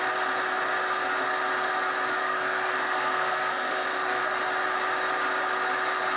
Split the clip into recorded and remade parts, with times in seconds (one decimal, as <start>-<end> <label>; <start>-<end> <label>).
0.0-2.2 recorded; 2.2-4.2 remade; 4.2-6.2 recorded